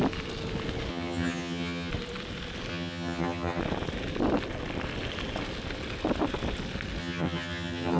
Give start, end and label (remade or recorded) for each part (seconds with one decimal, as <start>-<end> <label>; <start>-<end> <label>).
0.0-0.9 recorded; 0.9-1.9 remade; 1.9-2.7 recorded; 2.7-3.6 remade; 3.6-7.0 recorded; 7.0-8.0 remade